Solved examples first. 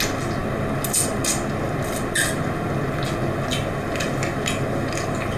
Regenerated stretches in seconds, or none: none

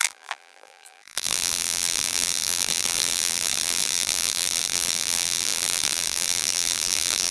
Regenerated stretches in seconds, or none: 0.0-7.3 (vocoder, BigVGAN v2)

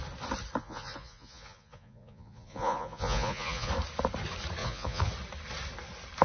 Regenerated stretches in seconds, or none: 0.6-3.7 (vocoder, Vocos); 4.6-5.1

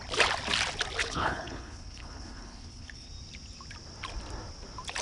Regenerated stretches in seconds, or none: 1.0-3.1 (codec, HILCodec)

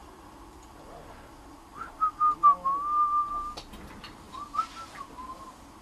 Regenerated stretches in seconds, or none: none

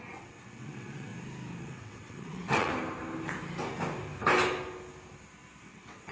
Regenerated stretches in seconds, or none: 0.0-1.1 (vocoder, WaveNeXt); 1.6-2.7; 5.6-6.1

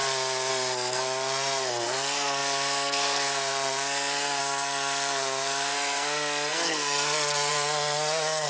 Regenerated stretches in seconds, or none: 0.5-8.5 (codec, SNAC)

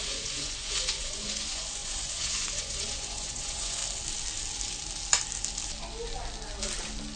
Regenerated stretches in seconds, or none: 0.0-3.8 (vocoder, Vocos)